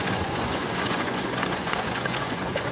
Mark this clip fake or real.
fake